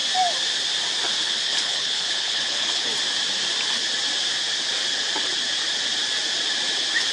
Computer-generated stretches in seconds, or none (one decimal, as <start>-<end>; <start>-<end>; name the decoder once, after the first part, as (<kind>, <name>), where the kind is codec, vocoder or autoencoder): 1.2-2.9 (codec, HILCodec)

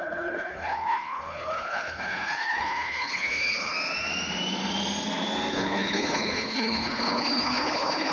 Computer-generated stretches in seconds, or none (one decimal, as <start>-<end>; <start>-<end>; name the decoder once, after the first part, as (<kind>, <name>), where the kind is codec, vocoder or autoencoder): 0.0-3.7 (codec, HILCodec); 5.5-8.1

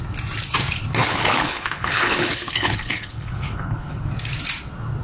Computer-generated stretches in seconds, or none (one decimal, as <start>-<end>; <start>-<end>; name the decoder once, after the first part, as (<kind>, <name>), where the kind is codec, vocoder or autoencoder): 1.0-4.0 (codec, HILCodec)

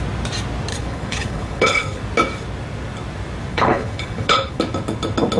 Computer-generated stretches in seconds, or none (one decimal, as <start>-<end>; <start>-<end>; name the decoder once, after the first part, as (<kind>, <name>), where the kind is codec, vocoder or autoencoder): 0.7-2.0 (codec, HILCodec); 3.5-4.6

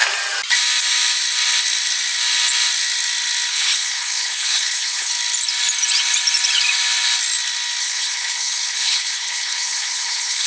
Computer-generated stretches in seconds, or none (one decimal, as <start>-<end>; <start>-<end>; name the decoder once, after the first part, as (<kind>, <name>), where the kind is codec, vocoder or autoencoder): 3.5-5.1 (codec, HILCodec); 7.8-10.5

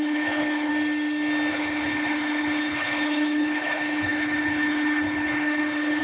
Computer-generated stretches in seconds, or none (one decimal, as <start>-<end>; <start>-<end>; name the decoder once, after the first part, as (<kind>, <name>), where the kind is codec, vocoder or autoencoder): 0.0-0.7 (codec, HILCodec); 1.5-6.0

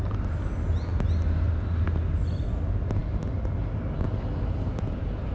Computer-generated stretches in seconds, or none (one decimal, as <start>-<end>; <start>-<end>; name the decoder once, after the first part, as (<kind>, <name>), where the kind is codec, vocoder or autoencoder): none

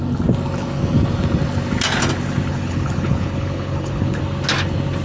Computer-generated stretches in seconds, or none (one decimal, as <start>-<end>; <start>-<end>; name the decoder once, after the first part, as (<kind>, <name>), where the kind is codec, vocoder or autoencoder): 2.5-4.2 (codec, HILCodec)